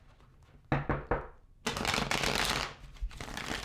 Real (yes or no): yes